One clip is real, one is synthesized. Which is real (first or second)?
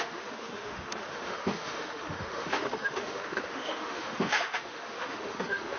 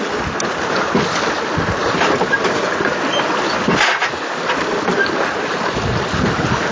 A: second